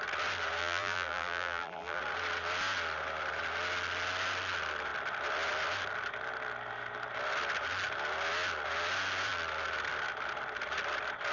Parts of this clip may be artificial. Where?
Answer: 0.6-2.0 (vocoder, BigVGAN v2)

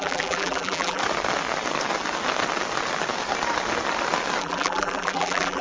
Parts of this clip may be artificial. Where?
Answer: 0.0-1.0 (vocoder, BigVGAN v2); 4.4-5.6

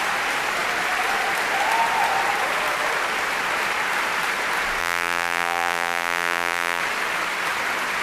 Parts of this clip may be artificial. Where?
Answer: 4.8-6.8 (vocoder, BigVGAN v2)

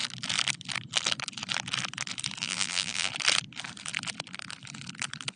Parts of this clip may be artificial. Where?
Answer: 2.4-3.1 (vocoder, BigVGAN v2)

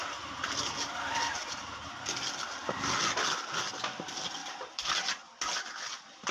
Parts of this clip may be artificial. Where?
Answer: 4.4-5.0 (vocoder, BigVGAN v2)

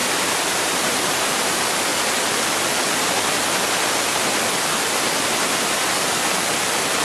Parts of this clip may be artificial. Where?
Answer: 0.0-1.5 (vocoder, BigVGAN v2)

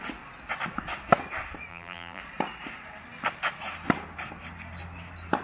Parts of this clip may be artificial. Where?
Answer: 1.7-2.2 (vocoder, BigVGAN v2)